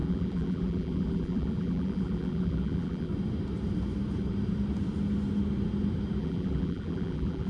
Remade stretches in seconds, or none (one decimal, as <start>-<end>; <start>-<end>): 0.0-3.1; 6.2-7.5